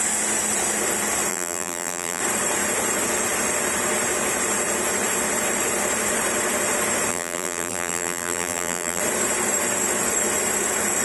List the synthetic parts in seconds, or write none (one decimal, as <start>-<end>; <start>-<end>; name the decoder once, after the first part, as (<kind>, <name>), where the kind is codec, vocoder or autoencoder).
1.3-2.2 (vocoder, BigVGAN v2); 7.1-9.0